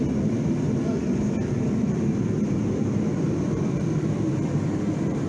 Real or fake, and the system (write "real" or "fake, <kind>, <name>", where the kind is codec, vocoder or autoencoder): fake, vocoder, BigVGAN v2